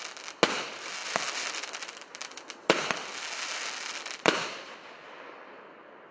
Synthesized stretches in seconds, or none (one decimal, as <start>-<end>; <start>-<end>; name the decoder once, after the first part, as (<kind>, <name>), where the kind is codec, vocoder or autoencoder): none